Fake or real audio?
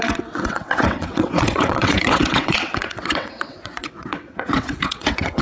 fake